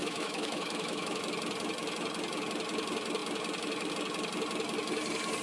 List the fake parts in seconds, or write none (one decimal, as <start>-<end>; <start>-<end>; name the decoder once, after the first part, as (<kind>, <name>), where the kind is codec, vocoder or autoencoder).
0.0-1.2 (autoencoder, DAC-VAE)